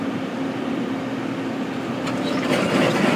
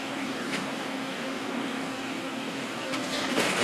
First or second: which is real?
first